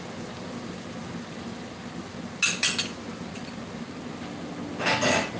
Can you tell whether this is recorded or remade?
recorded